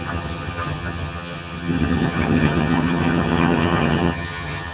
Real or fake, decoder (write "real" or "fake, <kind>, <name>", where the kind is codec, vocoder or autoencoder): fake, vocoder, HiFi-GAN